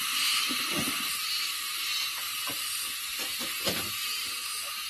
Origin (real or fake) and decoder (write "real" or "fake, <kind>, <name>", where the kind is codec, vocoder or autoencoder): real